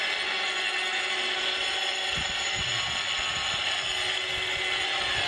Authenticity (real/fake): real